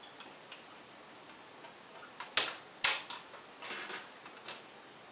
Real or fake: real